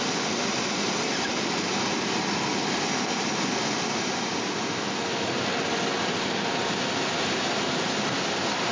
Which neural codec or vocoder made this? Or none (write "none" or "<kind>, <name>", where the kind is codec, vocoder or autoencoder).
none